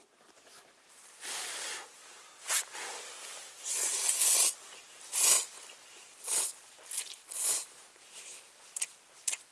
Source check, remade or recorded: recorded